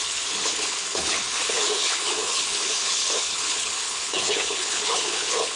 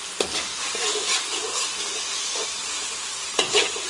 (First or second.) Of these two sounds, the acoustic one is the second